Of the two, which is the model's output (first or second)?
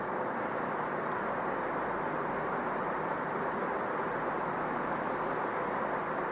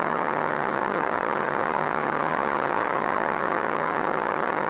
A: second